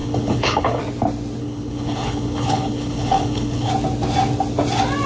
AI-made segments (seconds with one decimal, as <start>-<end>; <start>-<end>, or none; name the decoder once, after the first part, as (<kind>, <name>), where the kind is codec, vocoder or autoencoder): 0.0-0.8 (codec, HILCodec); 1.4-3.7